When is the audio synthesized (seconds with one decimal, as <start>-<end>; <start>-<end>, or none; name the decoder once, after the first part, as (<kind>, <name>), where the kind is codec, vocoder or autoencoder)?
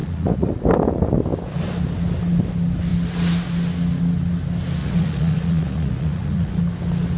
0.0-0.6 (vocoder, Vocos); 4.8-6.6